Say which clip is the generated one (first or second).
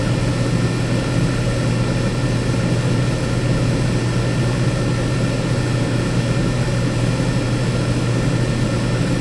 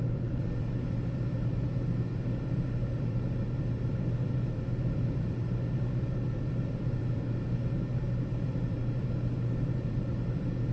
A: second